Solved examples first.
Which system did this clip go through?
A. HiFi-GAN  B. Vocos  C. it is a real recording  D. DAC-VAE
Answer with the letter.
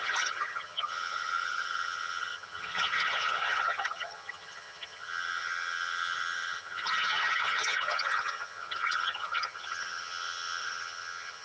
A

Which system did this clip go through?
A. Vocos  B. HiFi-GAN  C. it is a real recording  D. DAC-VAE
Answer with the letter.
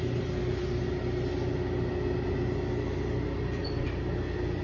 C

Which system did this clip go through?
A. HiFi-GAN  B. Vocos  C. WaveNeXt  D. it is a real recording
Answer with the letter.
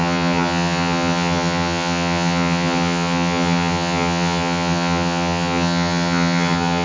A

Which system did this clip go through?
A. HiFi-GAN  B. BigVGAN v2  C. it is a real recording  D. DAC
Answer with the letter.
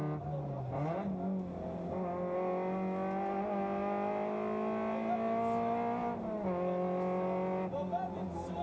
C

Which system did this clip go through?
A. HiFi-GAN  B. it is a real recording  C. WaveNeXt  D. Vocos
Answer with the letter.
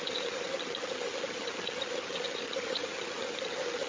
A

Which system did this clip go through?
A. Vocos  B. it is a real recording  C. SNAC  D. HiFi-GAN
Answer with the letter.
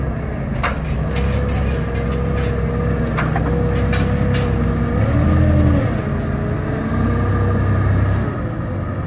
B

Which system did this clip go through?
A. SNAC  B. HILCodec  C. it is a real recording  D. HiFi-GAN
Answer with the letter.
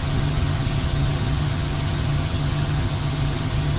D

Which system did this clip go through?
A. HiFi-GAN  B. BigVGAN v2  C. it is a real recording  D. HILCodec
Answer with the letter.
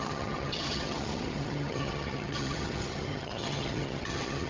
A